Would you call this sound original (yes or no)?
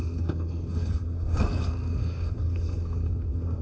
no